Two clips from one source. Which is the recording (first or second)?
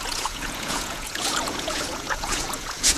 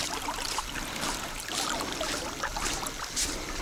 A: second